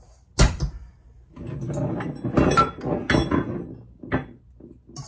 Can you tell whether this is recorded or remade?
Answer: recorded